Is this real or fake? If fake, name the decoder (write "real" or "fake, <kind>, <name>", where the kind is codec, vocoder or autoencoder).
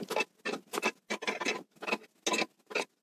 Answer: real